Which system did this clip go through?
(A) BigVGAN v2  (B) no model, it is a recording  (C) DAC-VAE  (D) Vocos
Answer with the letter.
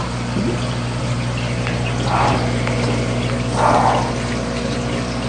B